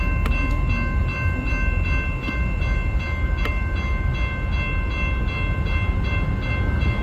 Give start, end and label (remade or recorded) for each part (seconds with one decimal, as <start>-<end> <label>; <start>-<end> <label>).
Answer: 0.0-7.0 recorded